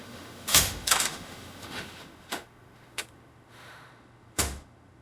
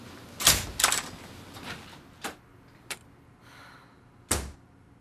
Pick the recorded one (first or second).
second